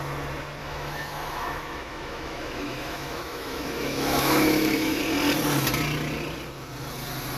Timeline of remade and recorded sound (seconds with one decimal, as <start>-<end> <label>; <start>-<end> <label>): 0.0-0.6 recorded; 0.6-5.0 remade; 5.0-7.4 recorded